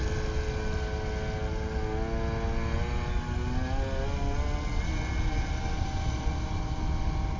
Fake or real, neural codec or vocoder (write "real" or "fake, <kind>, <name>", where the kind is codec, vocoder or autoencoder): real